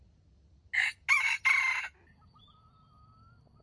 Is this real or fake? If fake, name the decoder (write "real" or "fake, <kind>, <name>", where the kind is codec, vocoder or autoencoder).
real